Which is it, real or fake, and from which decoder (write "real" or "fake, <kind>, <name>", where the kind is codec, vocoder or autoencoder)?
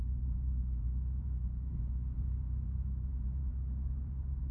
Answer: fake, vocoder, BigVGAN v2